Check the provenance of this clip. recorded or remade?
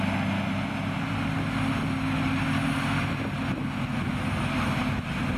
recorded